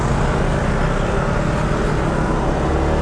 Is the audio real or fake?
real